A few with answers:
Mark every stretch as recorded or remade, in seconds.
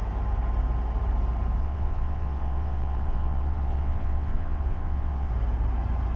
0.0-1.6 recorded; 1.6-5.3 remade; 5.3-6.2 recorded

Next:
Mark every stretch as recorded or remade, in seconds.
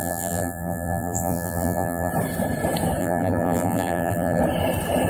0.0-2.1 remade; 2.1-3.0 recorded; 3.0-4.4 remade; 4.4-5.1 recorded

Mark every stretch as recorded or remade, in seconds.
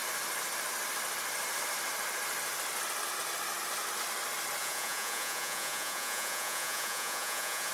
0.0-4.6 recorded; 4.6-7.7 remade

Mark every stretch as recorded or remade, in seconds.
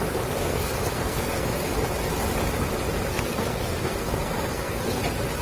0.0-0.4 recorded; 0.4-1.7 remade; 1.7-3.1 recorded; 3.1-5.0 remade; 5.0-5.4 recorded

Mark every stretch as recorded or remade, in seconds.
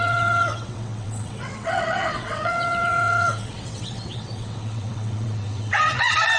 0.0-6.4 remade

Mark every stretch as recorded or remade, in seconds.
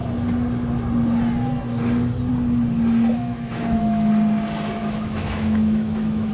0.0-3.1 recorded; 3.1-4.1 remade; 4.1-4.8 recorded; 4.8-6.3 remade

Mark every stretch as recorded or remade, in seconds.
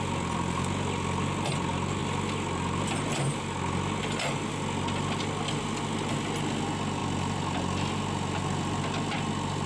0.0-9.7 recorded